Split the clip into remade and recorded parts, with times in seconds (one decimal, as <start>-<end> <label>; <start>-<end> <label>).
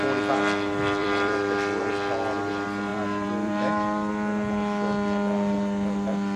0.0-1.0 recorded; 1.0-1.9 remade; 1.9-2.9 recorded; 2.9-4.1 remade; 4.1-6.4 recorded